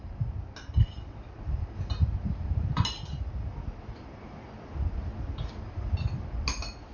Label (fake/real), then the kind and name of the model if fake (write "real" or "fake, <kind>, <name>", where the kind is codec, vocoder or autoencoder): real